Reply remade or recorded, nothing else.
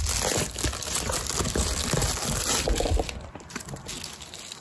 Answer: recorded